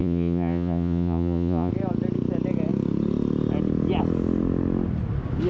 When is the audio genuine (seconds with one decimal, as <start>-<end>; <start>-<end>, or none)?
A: 1.7-5.5